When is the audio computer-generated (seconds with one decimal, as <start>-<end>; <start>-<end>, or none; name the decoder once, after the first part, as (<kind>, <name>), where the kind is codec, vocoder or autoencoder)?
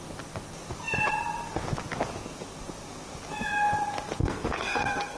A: 4.2-5.2 (codec, SNAC)